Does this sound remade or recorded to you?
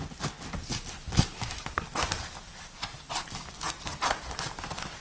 recorded